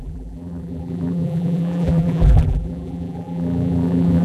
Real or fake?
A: fake